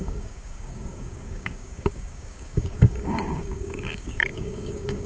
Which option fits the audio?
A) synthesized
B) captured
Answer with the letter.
A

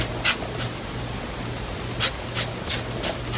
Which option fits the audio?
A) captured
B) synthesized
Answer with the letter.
A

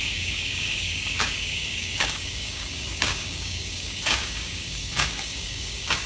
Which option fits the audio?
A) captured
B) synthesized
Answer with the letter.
B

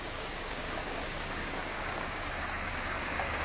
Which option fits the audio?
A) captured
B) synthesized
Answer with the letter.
B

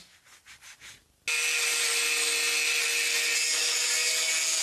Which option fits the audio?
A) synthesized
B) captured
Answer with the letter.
B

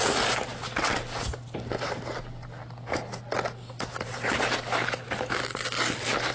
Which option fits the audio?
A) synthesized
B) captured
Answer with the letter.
B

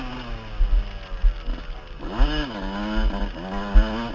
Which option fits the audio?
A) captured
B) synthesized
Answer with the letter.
A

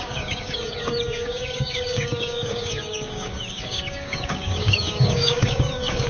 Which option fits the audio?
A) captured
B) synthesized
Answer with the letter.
B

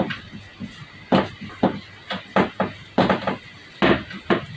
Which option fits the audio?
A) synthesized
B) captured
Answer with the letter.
B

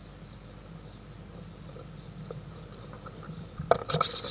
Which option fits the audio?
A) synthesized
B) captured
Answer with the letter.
B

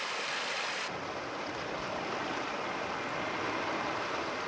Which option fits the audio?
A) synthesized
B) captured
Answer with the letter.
B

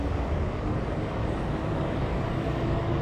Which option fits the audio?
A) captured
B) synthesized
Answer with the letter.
B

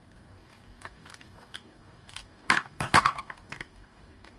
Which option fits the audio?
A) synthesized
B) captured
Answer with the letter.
A